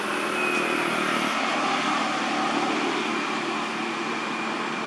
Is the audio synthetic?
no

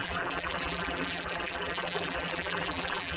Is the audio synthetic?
yes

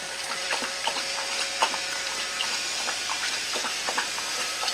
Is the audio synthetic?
yes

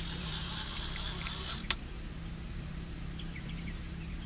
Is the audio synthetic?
yes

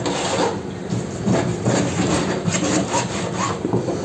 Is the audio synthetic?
no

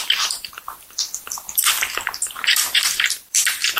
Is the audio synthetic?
yes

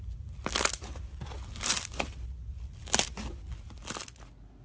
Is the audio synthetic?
no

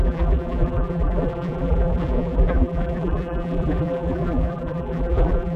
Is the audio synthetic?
yes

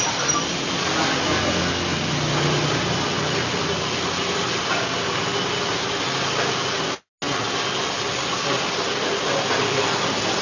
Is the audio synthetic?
no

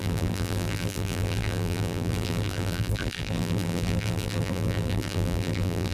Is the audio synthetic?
yes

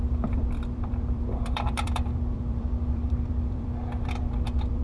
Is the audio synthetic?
yes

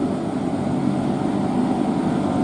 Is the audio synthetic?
no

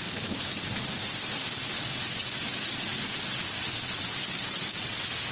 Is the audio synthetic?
no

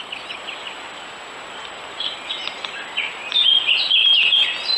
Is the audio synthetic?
no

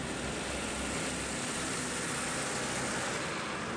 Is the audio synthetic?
no